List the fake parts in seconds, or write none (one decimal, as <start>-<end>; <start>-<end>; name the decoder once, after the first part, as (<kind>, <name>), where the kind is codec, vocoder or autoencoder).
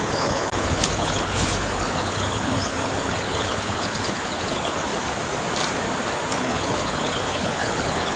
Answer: 0.0-4.9 (codec, HILCodec); 6.3-8.2